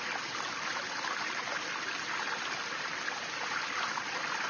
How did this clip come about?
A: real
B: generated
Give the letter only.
A